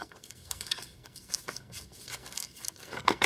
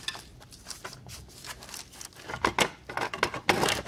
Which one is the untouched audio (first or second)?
second